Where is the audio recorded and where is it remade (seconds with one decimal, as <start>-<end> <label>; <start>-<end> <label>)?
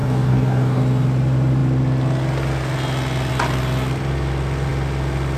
0.0-0.8 remade; 0.8-5.4 recorded